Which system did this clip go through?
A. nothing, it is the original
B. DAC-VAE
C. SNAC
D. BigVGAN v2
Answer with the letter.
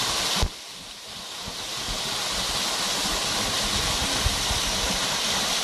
A